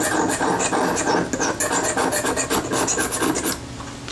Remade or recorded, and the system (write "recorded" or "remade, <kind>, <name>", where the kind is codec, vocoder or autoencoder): recorded